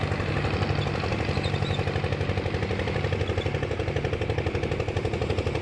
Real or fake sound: real